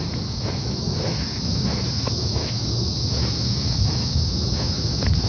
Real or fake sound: fake